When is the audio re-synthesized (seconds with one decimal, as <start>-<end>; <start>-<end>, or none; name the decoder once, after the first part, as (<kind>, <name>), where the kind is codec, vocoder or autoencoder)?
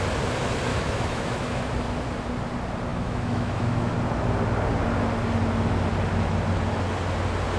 0.7-1.6 (autoencoder, DAC-VAE); 2.9-3.9